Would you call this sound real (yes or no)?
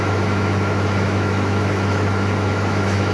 no